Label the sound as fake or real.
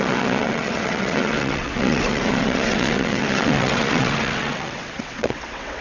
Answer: fake